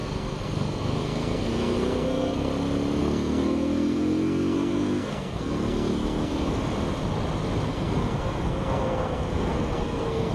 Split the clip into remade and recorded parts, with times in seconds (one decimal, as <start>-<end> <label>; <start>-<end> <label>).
0.0-2.5 remade; 2.5-3.0 recorded; 3.0-6.6 remade; 6.6-7.7 recorded; 7.7-10.3 remade